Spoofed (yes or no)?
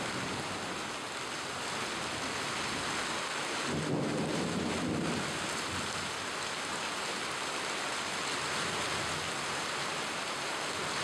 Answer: no